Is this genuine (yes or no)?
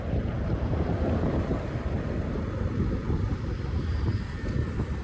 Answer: no